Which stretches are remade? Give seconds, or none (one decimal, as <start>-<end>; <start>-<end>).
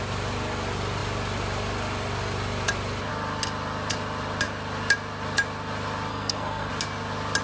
6.1-6.7